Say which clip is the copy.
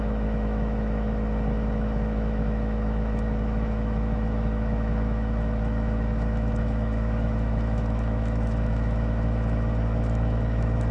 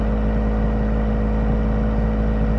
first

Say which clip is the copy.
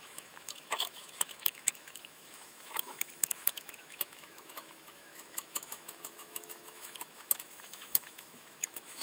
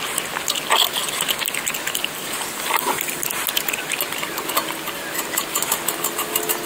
first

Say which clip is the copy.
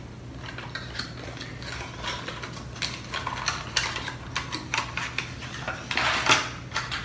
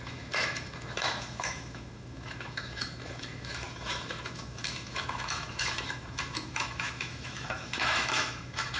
second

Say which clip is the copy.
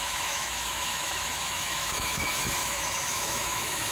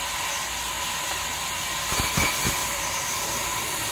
first